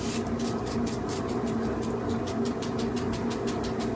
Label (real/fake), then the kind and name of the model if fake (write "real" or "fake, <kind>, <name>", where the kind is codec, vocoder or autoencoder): real